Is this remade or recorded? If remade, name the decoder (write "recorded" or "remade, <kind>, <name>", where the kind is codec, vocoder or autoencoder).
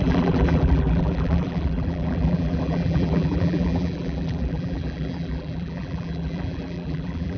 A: remade, vocoder, BigVGAN v2